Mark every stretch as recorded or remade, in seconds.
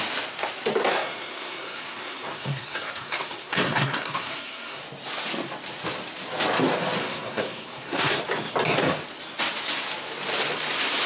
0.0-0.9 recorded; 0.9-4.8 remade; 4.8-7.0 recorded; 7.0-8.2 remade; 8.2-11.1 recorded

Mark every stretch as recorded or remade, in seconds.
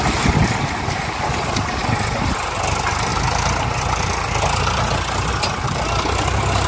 0.0-6.7 recorded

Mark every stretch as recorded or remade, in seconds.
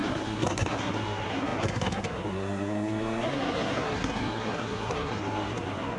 0.0-6.0 remade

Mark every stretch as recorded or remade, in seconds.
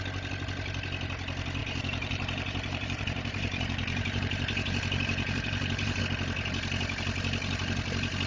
0.0-1.6 recorded; 1.6-6.0 remade; 6.0-8.3 recorded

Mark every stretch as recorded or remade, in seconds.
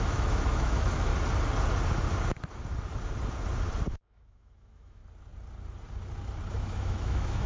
0.0-1.1 remade; 1.1-3.9 recorded; 3.9-5.0 remade; 5.0-6.5 recorded; 6.5-7.5 remade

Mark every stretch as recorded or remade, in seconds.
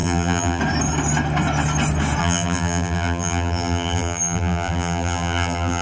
0.0-0.6 remade; 0.6-2.2 recorded; 2.2-5.8 remade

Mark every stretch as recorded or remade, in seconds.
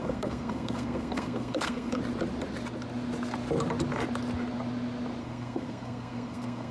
0.0-2.0 remade; 2.0-5.2 recorded; 5.2-6.7 remade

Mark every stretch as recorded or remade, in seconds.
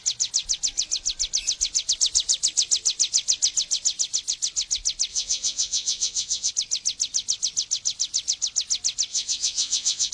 0.0-5.1 recorded; 5.1-6.5 remade; 6.5-9.1 recorded; 9.1-10.1 remade